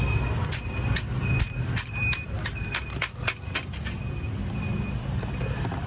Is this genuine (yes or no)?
yes